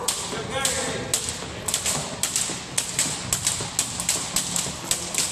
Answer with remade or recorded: recorded